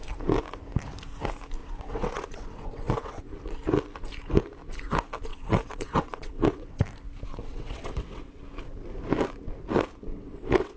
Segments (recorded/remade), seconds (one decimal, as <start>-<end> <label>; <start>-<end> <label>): 0.0-1.6 recorded; 1.6-3.2 remade; 3.2-5.3 recorded; 5.3-6.8 remade; 6.8-7.4 recorded; 7.4-8.4 remade; 8.4-10.1 recorded; 10.1-10.8 remade